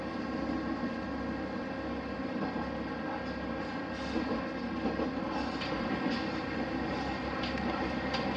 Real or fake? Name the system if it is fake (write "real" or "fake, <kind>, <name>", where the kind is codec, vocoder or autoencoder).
real